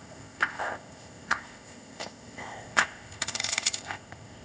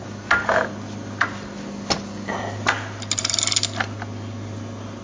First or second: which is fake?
first